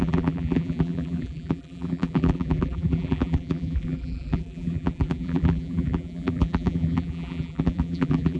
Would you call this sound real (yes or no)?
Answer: no